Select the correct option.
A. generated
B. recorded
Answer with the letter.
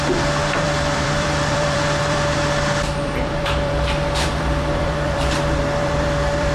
A